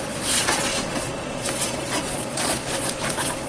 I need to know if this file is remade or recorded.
remade